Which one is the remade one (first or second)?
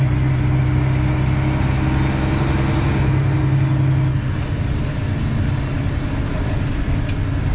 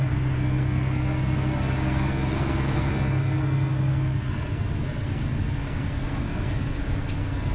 second